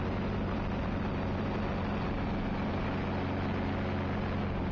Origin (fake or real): real